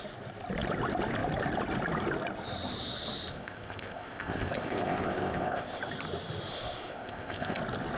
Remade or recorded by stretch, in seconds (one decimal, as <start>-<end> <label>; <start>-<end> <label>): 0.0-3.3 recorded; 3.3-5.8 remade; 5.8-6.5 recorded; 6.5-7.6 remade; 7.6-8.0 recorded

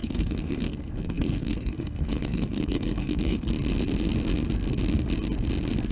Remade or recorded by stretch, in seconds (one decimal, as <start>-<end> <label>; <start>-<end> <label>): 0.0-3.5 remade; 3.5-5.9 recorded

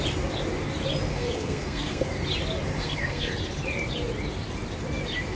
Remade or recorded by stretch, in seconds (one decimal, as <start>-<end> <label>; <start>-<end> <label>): 0.0-1.1 recorded; 1.1-2.1 remade; 2.1-2.8 recorded; 2.8-3.3 remade; 3.3-5.4 recorded

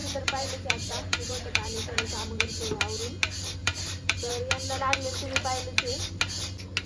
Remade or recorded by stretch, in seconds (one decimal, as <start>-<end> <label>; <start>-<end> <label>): 0.0-2.8 remade; 2.8-3.6 recorded; 3.6-4.3 remade; 4.3-6.9 recorded